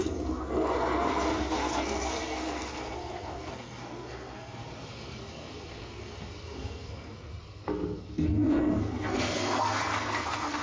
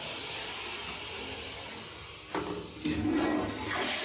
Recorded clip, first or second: second